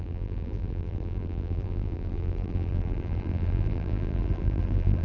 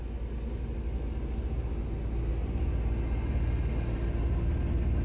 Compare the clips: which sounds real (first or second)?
second